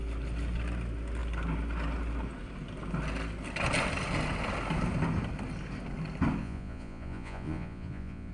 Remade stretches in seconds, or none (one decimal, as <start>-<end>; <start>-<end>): 6.4-8.3